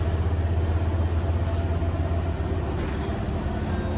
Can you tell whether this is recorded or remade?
recorded